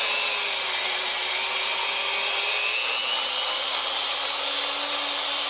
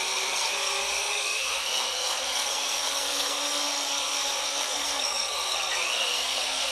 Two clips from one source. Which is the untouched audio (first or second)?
first